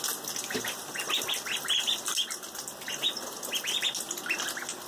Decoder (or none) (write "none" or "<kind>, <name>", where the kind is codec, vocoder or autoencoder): none